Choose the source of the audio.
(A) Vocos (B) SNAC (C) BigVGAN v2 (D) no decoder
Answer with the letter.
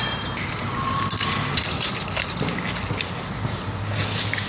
D